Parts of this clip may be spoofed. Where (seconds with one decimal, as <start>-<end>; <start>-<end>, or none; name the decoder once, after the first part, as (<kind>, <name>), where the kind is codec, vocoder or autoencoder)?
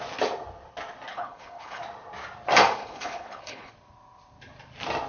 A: 1.1-1.8 (codec, HILCodec); 2.8-3.7